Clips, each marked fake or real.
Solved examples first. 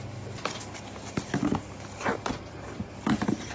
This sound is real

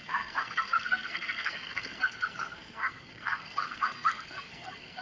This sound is fake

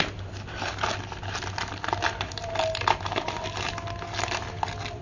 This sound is real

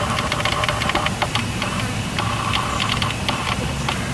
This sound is real